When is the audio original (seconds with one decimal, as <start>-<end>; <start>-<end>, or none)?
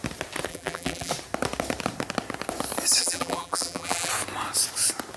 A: 0.0-0.5; 1.1-3.0; 4.1-5.2